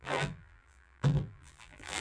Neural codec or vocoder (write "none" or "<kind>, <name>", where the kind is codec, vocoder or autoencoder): vocoder, BigVGAN v2